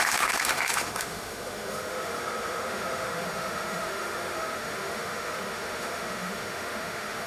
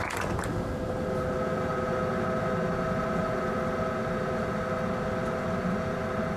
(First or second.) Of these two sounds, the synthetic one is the first